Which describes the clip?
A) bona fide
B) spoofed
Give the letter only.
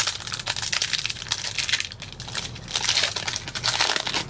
A